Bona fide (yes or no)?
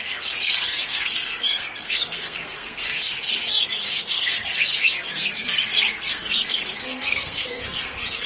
no